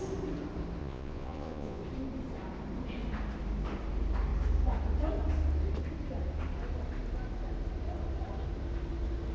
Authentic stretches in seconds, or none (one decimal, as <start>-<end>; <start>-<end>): 0.0-0.8; 1.8-9.3

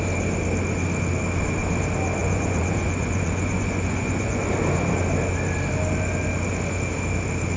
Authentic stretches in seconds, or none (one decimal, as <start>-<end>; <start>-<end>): 0.0-2.2; 4.4-7.6

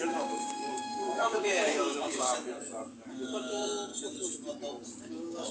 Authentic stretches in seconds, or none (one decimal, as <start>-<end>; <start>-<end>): 2.3-3.1; 3.9-5.0

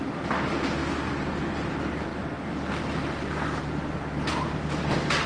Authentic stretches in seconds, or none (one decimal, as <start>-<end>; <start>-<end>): 0.0-5.3

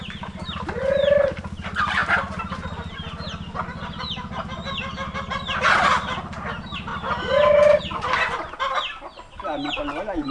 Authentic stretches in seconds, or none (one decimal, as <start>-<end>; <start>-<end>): 0.0-10.3